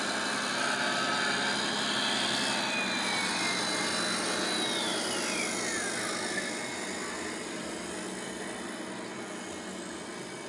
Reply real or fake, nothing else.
real